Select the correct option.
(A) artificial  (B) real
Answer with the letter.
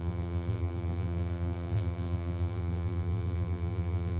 A